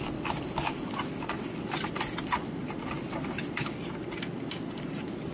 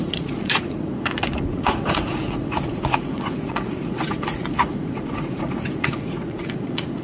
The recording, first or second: first